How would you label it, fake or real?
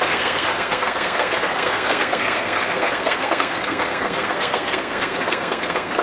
fake